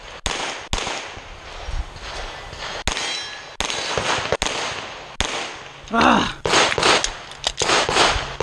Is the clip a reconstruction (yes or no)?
no